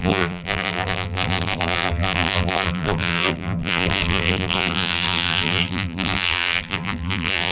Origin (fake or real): fake